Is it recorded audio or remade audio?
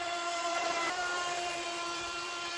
remade